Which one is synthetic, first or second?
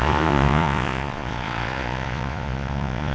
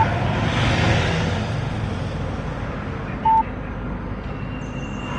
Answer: first